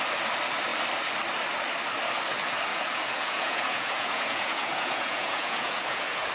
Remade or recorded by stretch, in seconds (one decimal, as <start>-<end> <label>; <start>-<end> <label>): 0.0-2.7 recorded; 2.7-6.3 remade